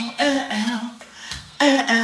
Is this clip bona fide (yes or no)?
no